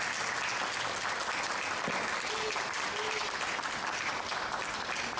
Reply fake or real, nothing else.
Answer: real